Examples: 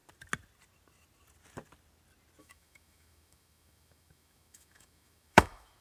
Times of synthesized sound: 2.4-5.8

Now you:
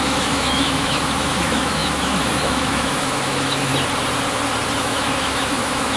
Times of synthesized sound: 0.0-3.7; 4.8-6.0

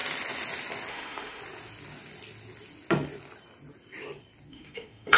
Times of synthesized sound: 0.9-1.4; 4.5-5.2

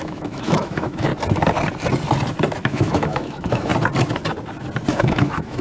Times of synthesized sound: 0.0-1.1; 2.6-3.7; 4.9-5.6

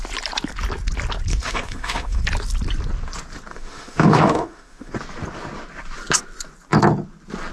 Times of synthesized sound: 1.3-2.2; 3.5-4.9

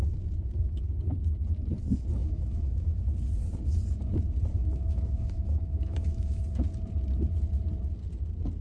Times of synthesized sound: 2.2-3.0; 4.6-6.4